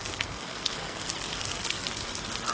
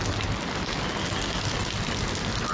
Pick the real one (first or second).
second